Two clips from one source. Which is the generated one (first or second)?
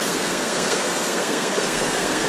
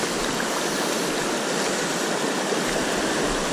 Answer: first